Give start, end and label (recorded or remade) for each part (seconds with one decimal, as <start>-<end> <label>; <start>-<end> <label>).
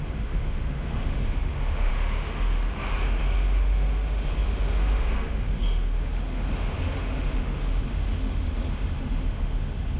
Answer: 0.0-10.0 remade